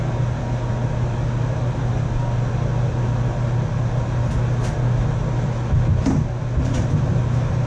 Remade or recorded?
recorded